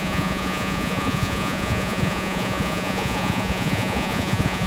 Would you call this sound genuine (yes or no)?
no